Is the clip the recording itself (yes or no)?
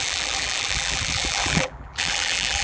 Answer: no